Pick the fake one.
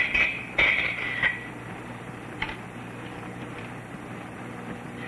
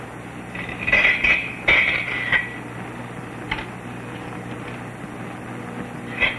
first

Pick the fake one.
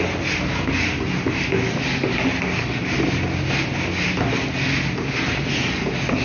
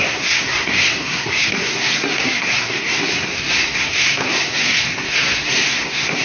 second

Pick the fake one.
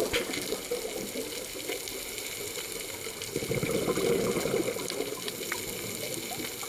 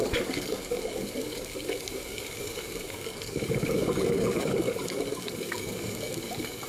second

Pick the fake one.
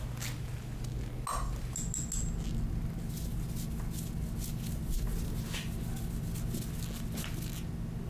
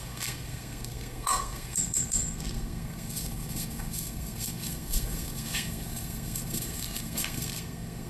second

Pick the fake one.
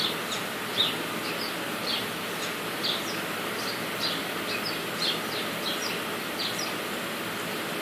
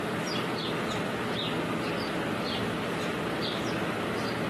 first